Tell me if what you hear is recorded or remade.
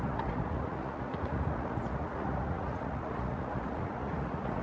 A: remade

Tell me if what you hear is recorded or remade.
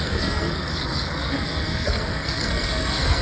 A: remade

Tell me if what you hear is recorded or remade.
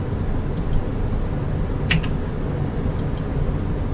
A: recorded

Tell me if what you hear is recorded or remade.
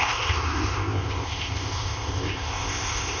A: remade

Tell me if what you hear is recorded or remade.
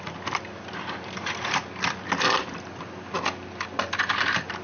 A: remade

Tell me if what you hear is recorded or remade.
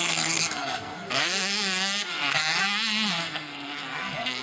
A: remade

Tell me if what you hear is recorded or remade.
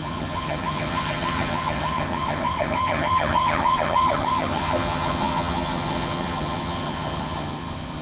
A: remade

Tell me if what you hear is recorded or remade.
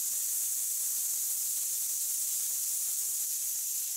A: remade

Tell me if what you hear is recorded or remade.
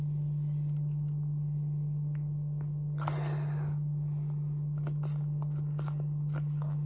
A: recorded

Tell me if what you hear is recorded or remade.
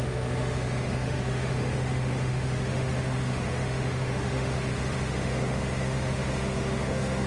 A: remade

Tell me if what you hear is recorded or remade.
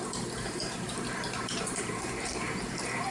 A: remade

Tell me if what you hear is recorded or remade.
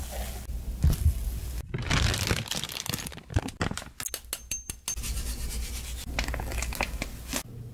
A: recorded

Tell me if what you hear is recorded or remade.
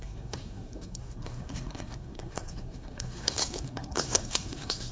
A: remade